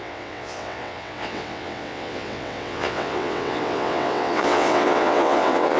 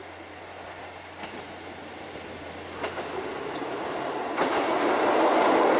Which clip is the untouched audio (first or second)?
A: second